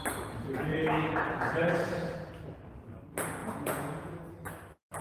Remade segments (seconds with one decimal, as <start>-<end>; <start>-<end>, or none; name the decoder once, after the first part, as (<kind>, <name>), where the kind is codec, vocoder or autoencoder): 0.7-1.2 (vocoder, Vocos); 1.6-2.3; 3.4-4.2

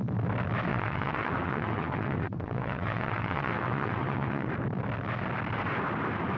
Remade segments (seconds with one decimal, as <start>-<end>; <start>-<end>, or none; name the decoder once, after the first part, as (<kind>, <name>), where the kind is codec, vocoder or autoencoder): 0.7-4.5 (vocoder, WaveNeXt)

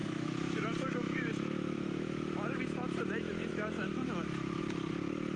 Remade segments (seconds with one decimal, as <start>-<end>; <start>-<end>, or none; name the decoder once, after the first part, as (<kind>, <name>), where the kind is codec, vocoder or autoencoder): 0.0-2.6 (autoencoder, DAC-VAE); 3.5-4.6

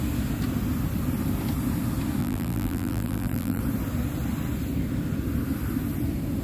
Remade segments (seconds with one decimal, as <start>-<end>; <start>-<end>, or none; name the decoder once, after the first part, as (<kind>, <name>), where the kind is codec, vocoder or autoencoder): 2.2-3.6 (vocoder, BigVGAN v2)

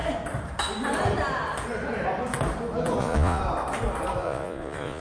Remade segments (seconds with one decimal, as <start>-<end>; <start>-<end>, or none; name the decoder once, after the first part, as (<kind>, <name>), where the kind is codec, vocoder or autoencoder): 3.0-3.4 (vocoder, Vocos); 4.2-5.0